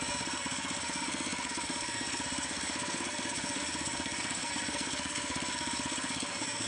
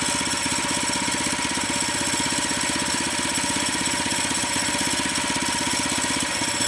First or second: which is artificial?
first